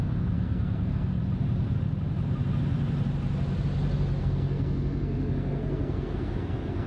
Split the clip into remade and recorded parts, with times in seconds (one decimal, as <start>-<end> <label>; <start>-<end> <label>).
0.0-1.2 remade; 1.2-4.2 recorded; 4.2-6.9 remade